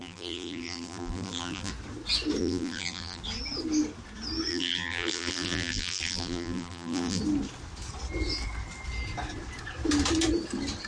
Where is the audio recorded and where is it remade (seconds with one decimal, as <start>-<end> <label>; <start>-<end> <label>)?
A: 0.0-1.7 remade; 1.7-2.4 recorded; 2.4-3.2 remade; 3.2-4.5 recorded; 4.5-7.2 remade; 7.2-10.9 recorded